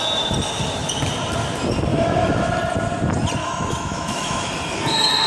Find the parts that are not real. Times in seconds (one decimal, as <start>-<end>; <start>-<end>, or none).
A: 1.9-2.5; 3.4-4.5